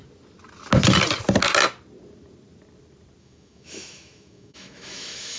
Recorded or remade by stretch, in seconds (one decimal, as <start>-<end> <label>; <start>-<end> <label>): 0.0-3.2 recorded; 3.2-5.4 remade